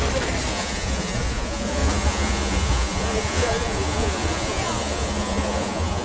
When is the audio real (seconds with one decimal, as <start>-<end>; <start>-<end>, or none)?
0.0-0.5